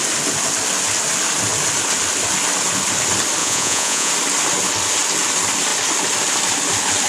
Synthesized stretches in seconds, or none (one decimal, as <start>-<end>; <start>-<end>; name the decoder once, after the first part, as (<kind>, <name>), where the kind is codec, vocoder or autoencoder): 3.4-4.1 (vocoder, Vocos)